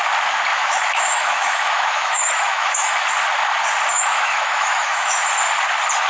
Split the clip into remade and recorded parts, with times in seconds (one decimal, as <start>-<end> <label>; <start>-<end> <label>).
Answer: 0.0-0.5 recorded; 0.5-2.9 remade; 2.9-3.9 recorded; 3.9-5.2 remade; 5.2-6.1 recorded